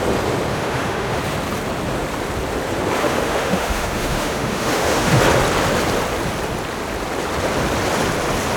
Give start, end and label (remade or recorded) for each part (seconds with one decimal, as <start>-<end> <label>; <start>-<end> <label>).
0.0-0.5 recorded; 0.5-1.2 remade; 1.2-3.0 recorded; 3.0-5.2 remade; 5.2-8.6 recorded

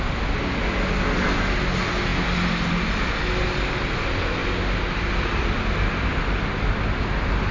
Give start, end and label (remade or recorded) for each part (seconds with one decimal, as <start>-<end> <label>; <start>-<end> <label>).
0.0-7.5 recorded

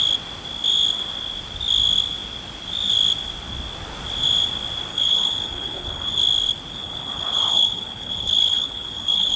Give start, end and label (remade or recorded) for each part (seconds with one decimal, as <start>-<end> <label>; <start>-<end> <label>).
0.0-4.9 recorded; 4.9-6.1 remade; 6.1-6.7 recorded; 6.7-9.4 remade

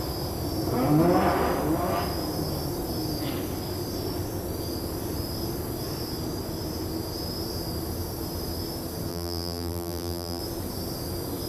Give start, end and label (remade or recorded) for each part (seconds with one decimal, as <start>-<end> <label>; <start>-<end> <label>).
0.0-9.1 recorded; 9.1-10.4 remade; 10.4-11.5 recorded